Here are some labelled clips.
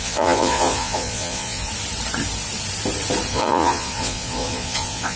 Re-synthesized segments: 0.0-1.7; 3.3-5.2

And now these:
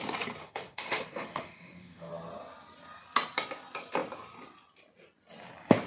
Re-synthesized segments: 0.4-2.1

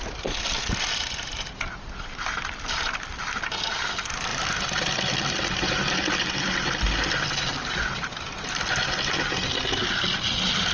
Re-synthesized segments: 4.3-5.8